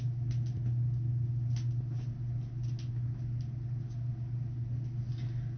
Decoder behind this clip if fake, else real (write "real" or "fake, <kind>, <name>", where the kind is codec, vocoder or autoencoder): real